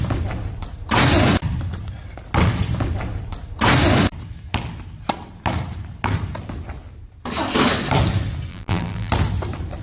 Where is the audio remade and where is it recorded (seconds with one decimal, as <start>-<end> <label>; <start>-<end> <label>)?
0.0-8.5 recorded; 8.5-9.1 remade; 9.1-9.8 recorded